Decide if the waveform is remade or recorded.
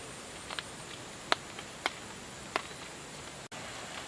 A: recorded